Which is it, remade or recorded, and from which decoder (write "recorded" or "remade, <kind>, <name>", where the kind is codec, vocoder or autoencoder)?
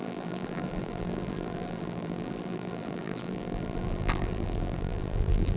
remade, vocoder, BigVGAN v2